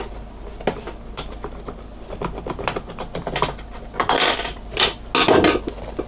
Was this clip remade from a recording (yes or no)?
no